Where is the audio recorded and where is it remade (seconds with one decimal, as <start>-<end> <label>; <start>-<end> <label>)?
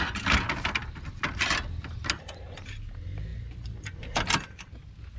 0.0-5.2 recorded